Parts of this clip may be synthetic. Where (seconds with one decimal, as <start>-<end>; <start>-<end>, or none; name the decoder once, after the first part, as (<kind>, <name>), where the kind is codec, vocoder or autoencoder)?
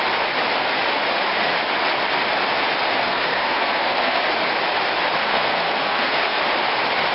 3.0-4.2 (codec, SNAC); 5.2-6.4